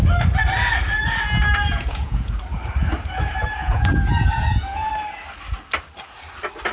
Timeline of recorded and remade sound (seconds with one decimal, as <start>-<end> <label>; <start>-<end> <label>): 0.0-1.5 recorded; 1.5-2.3 remade; 2.3-3.6 recorded; 3.6-4.9 remade; 4.9-6.7 recorded